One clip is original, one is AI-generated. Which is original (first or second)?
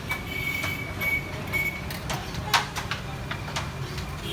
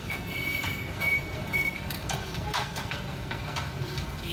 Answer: first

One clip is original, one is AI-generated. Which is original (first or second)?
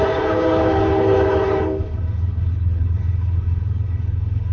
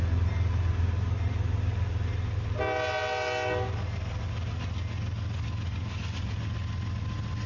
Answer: second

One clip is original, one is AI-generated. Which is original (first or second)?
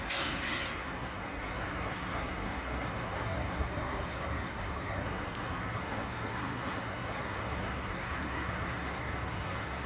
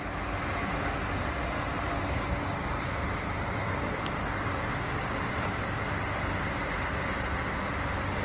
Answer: second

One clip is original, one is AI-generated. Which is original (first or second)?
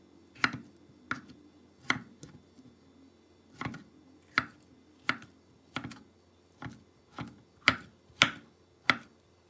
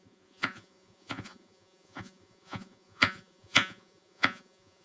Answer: first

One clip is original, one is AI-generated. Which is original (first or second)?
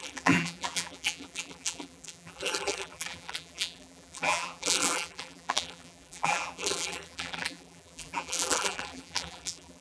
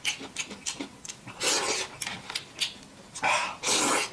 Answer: second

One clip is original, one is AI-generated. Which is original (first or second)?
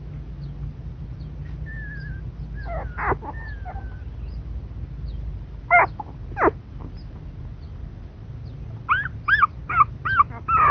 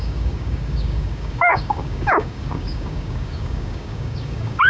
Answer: first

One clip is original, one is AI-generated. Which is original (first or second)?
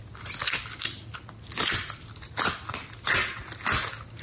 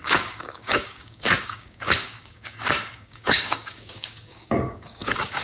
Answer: first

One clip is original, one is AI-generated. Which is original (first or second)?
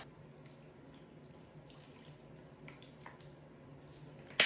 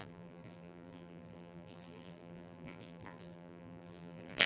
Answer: first